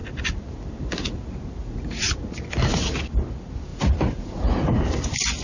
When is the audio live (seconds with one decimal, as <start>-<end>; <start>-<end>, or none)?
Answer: 0.0-1.6; 2.2-3.7; 4.4-5.4